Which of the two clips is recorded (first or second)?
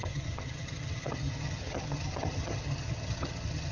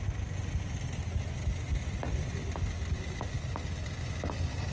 second